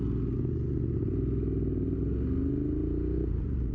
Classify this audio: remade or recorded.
recorded